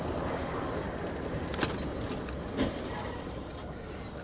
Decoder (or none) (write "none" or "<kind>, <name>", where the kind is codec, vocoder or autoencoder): none